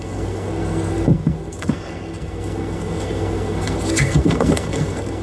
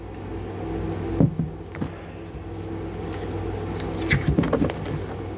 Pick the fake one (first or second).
first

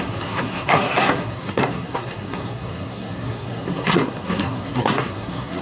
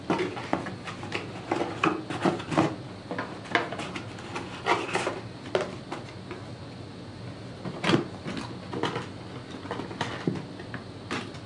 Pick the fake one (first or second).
first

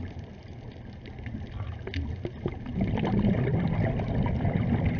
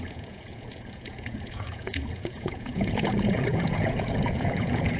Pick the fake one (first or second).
second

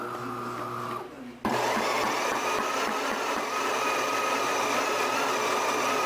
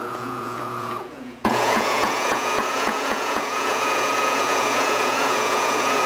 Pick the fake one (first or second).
second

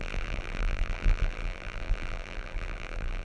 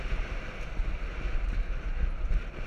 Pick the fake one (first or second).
first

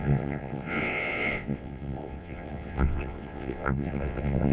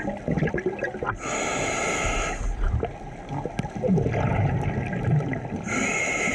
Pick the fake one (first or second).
first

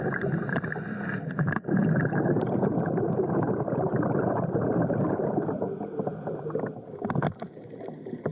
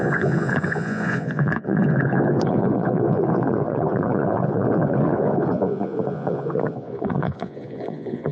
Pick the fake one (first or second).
second